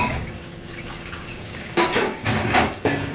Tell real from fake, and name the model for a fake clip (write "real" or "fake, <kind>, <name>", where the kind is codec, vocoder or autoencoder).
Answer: fake, codec, DAC